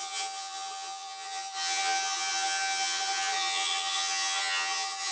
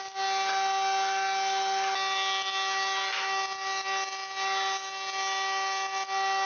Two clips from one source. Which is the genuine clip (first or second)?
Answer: second